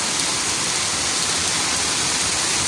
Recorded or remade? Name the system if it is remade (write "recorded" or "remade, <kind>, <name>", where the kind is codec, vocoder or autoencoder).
recorded